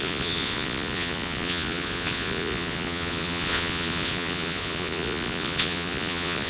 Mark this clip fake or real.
fake